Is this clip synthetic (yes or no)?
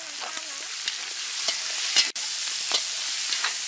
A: no